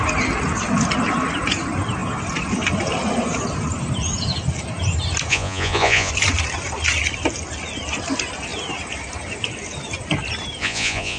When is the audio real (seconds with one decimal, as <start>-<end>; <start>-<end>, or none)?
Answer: 0.0-5.3; 6.1-10.6